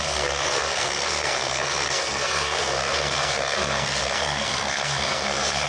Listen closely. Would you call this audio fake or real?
fake